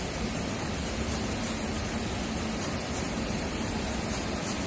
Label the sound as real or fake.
real